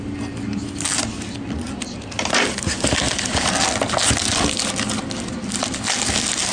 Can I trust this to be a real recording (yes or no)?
yes